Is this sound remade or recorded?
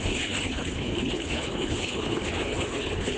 remade